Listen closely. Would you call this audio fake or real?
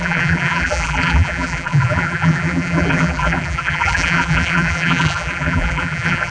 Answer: fake